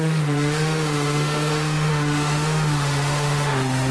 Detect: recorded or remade remade